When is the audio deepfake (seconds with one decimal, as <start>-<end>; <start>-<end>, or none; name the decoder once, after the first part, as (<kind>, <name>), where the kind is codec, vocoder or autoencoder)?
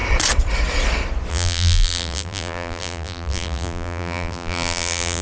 1.3-5.2 (vocoder, BigVGAN v2)